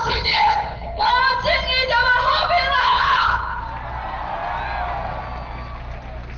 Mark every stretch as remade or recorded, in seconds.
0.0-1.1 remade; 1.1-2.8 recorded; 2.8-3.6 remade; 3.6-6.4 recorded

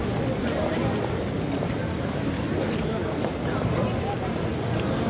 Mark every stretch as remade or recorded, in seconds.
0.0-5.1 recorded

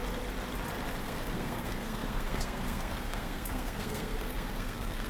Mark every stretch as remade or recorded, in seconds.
0.0-1.0 recorded; 1.0-5.1 remade

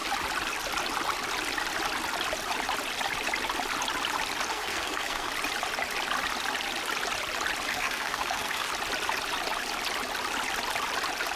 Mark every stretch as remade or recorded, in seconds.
0.0-4.5 recorded; 4.5-5.3 remade; 5.3-7.7 recorded; 7.7-8.7 remade; 8.7-11.4 recorded